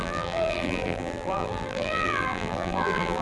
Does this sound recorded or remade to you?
remade